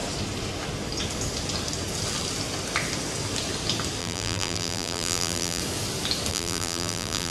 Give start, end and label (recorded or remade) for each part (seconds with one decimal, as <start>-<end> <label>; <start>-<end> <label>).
0.0-4.0 recorded; 4.0-5.6 remade; 5.6-6.3 recorded; 6.3-7.3 remade